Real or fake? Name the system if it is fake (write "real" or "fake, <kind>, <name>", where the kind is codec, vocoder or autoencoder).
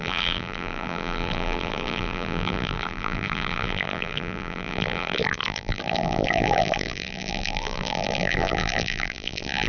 fake, vocoder, BigVGAN v2